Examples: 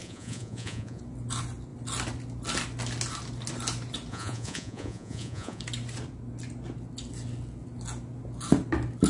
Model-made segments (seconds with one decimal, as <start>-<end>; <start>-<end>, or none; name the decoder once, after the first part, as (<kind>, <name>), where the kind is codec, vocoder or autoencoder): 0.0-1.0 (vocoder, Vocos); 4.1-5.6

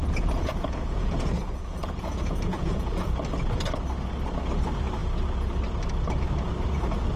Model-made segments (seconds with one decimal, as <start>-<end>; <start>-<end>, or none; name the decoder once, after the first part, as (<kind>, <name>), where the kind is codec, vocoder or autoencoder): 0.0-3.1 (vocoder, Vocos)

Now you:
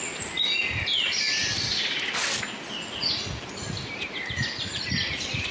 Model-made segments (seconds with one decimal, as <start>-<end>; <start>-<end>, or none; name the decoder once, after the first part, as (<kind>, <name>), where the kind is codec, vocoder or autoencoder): none

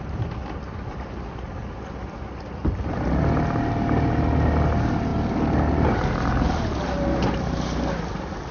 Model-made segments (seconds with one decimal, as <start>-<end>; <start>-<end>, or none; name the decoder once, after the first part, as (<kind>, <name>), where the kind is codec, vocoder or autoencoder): none

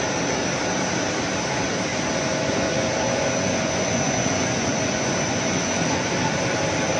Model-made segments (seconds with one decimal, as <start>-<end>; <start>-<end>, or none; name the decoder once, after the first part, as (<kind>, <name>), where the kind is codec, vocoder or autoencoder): 1.9-6.1 (vocoder, Vocos)

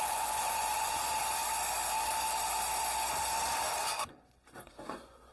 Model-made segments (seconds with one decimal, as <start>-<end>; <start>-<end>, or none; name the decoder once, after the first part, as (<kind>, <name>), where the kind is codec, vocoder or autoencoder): 0.0-1.4 (vocoder, Vocos); 3.8-5.3

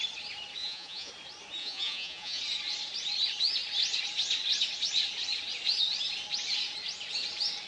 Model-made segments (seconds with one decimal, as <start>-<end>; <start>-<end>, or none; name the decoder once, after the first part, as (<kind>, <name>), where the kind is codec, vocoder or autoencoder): 0.6-1.1 (vocoder, Vocos); 1.6-2.4

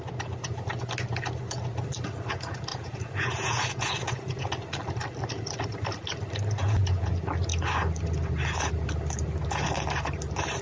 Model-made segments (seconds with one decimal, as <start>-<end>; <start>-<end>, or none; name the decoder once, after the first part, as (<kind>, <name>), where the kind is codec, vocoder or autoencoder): 2.7-4.5 (vocoder, Vocos); 6.6-7.1